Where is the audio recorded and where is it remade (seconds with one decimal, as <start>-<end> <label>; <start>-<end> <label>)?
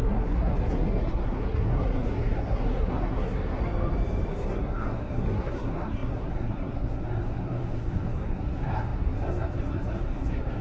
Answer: 0.0-3.6 remade; 3.6-4.3 recorded; 4.3-10.6 remade